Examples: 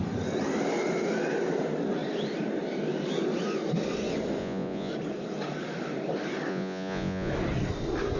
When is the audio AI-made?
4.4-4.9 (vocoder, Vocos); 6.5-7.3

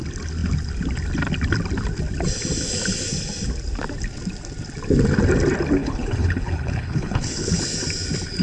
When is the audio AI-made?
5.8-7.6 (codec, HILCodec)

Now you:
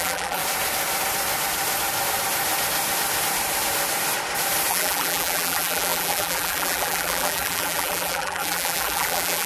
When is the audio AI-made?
0.0-0.4 (vocoder, BigVGAN v2); 4.7-9.5

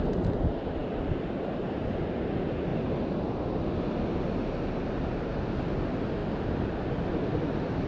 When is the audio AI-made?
0.8-1.8 (vocoder, BigVGAN v2); 2.7-3.5; 6.2-7.1

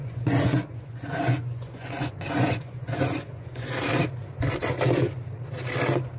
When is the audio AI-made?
0.0-3.7 (vocoder, Vocos)